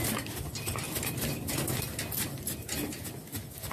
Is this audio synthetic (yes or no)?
no